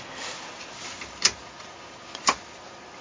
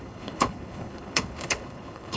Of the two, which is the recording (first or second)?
first